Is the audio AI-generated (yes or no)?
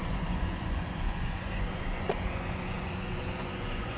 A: yes